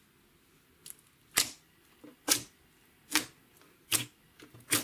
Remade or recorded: recorded